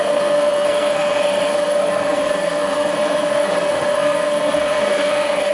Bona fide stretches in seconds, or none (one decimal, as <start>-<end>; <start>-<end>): none